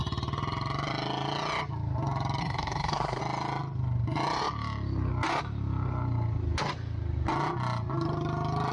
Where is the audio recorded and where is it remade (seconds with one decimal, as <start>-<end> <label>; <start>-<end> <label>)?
0.0-2.4 recorded; 2.4-3.2 remade; 3.2-8.7 recorded